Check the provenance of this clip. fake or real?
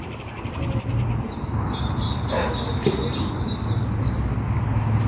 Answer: real